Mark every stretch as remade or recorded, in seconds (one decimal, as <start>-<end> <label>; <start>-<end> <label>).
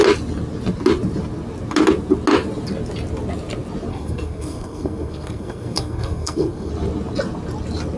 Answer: 0.0-3.9 recorded; 3.9-6.7 remade; 6.7-8.0 recorded